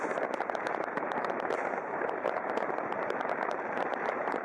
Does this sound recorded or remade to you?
remade